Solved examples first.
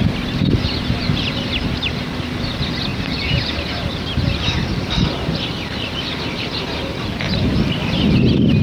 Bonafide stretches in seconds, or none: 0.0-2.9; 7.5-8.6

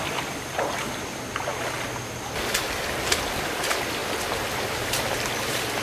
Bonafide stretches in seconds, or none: 1.5-2.7; 4.0-4.7